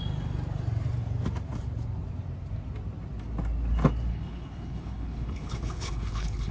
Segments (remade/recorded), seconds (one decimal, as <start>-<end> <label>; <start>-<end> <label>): 0.0-4.1 recorded; 4.1-6.5 remade